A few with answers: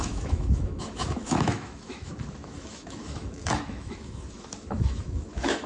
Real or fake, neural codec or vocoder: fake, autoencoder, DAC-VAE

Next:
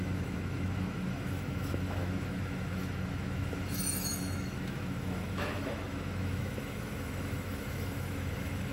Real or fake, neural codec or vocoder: fake, autoencoder, DAC-VAE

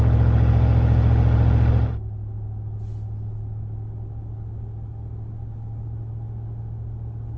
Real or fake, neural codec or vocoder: real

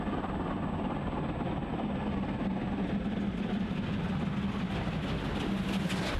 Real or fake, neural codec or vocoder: real